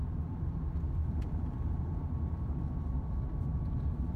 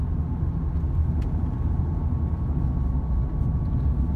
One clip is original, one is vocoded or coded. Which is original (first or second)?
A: second